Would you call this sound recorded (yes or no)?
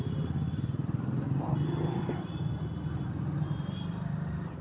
yes